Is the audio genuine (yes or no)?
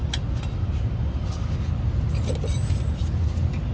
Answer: yes